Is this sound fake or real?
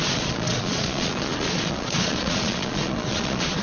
fake